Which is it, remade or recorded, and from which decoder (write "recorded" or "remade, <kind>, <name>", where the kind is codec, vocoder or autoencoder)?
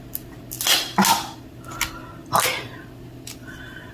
recorded